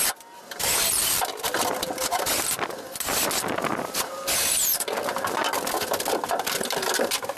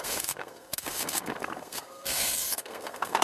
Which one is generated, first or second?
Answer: second